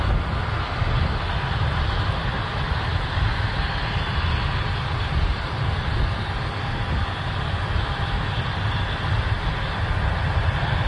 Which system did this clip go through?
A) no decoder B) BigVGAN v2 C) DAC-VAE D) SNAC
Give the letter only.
A